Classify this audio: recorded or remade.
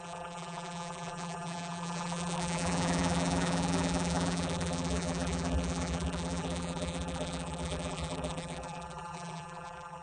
remade